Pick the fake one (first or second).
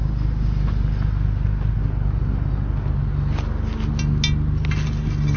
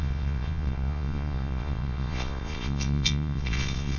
second